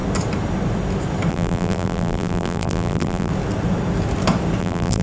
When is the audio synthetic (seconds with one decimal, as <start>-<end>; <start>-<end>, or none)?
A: 1.3-3.3; 4.6-5.0